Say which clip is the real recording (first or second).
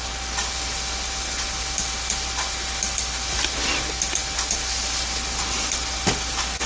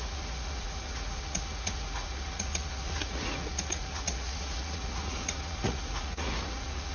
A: first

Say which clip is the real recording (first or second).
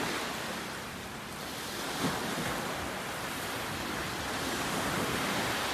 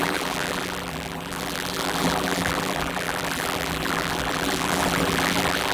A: first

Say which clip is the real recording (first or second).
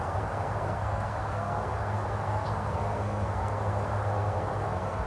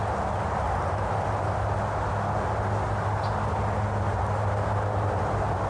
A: second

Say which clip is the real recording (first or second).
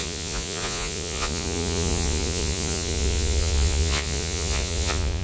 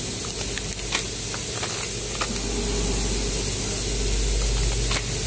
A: second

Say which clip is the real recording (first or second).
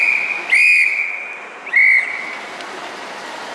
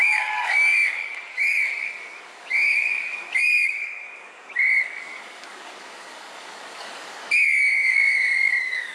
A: first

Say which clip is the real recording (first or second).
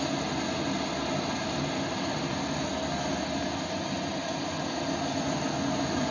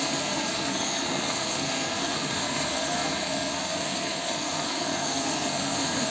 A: first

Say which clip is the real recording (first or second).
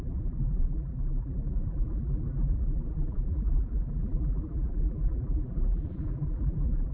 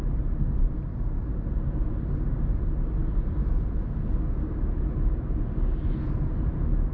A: second